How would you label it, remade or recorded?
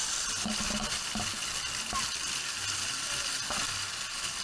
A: recorded